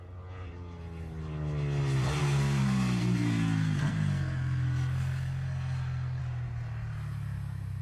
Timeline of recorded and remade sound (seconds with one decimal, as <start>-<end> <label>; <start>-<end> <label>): 0.0-2.2 recorded; 2.2-6.2 remade; 6.2-7.8 recorded